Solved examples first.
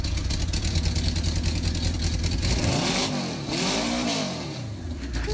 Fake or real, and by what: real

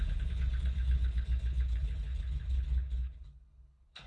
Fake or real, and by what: fake, codec, HILCodec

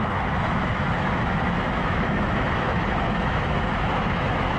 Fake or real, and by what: fake, autoencoder, DAC-VAE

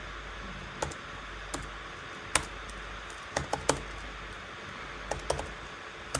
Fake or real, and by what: real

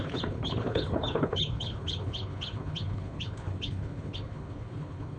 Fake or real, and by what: fake, codec, HILCodec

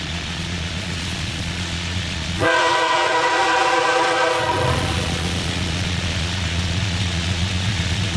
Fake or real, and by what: fake, vocoder, Vocos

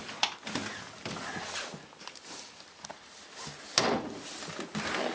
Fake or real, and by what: real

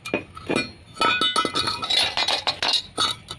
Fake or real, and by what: real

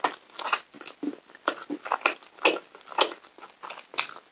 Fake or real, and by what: real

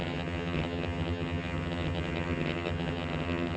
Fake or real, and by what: fake, vocoder, HiFi-GAN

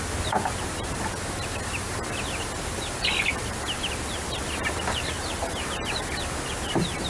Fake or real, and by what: real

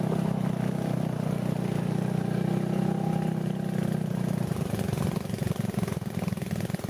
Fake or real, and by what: real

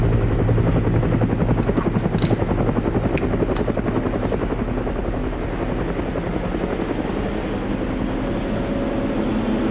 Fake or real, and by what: real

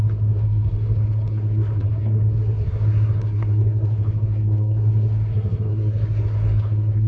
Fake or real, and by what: fake, codec, SNAC